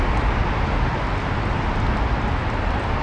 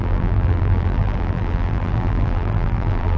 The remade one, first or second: second